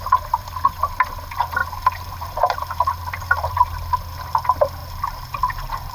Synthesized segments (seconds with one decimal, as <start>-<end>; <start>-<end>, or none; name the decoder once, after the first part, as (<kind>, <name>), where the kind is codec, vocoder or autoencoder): 1.6-3.6 (vocoder, BigVGAN v2); 4.8-5.9